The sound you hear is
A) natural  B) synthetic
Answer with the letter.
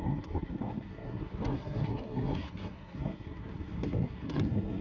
B